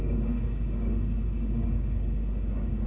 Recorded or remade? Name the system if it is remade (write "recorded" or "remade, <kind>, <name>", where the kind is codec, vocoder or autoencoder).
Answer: remade, codec, DAC